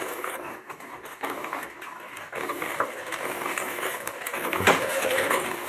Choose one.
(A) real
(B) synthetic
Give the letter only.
B